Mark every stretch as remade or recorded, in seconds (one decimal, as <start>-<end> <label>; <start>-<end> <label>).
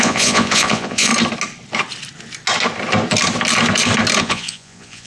0.0-1.1 remade; 1.1-4.2 recorded; 4.2-5.1 remade